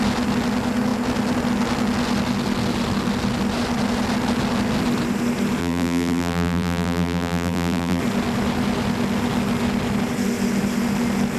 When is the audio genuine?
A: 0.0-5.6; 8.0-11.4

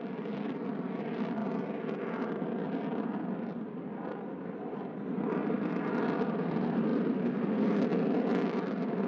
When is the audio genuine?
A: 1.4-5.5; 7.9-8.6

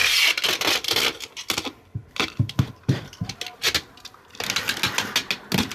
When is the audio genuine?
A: 2.7-5.7

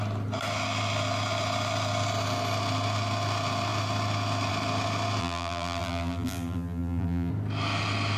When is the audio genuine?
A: 0.0-5.2; 7.3-8.2

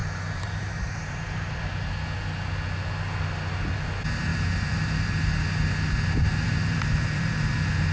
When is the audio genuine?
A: 1.6-4.3; 5.2-6.3; 7.5-7.9

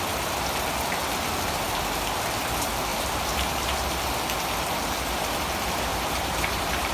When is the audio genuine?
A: 0.0-2.9; 3.9-5.9